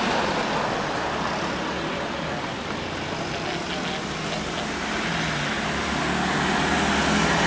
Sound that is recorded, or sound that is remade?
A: recorded